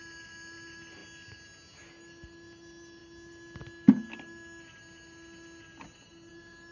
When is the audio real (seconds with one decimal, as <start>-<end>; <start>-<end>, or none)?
1.0-2.0; 3.0-6.3